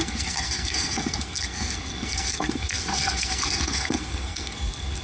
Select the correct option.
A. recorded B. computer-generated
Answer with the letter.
B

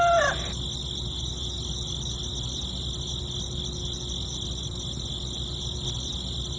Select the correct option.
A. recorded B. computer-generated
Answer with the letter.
A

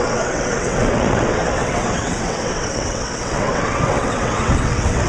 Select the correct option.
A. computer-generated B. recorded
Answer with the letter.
A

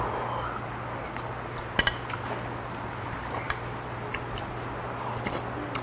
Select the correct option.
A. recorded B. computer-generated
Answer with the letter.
A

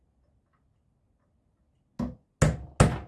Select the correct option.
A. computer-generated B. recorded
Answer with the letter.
B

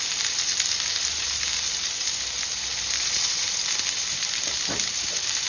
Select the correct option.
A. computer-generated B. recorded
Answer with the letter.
A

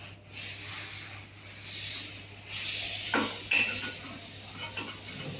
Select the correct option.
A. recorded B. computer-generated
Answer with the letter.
A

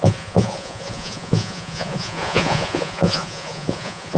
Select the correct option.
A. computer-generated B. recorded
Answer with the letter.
A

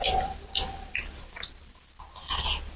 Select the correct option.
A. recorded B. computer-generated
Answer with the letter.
A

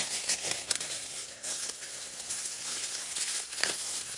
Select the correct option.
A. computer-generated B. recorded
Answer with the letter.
A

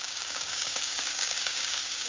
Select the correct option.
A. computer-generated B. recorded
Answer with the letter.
A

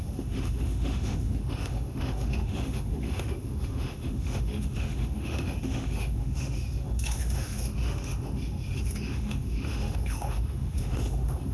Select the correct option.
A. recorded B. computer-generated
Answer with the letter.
B